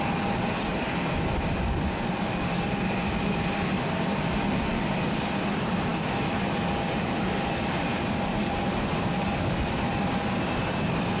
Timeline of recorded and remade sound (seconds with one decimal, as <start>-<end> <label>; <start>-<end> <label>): 0.0-11.2 recorded